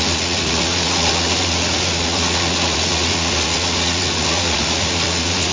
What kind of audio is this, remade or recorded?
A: remade